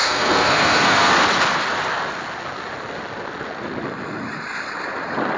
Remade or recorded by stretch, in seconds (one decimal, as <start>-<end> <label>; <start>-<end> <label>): 0.0-1.1 remade; 1.1-5.4 recorded

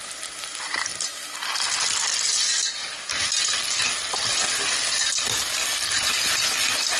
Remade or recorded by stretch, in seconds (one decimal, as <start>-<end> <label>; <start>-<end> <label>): 0.0-7.0 recorded

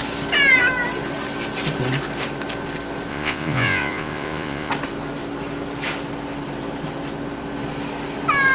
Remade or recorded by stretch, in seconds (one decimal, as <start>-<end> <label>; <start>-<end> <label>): 0.0-3.1 recorded; 3.1-4.7 remade; 4.7-8.5 recorded

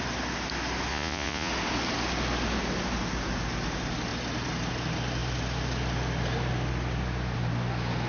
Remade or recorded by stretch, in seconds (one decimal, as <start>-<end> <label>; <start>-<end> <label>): 0.0-0.9 recorded; 0.9-1.5 remade; 1.5-8.1 recorded

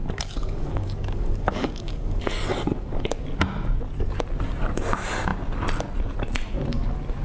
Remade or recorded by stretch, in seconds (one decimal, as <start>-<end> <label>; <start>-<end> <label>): 0.0-2.2 remade; 2.2-7.2 recorded